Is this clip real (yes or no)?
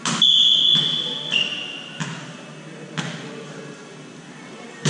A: yes